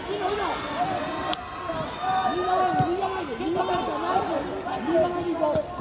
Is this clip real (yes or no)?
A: yes